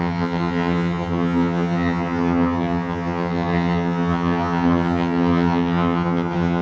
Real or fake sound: fake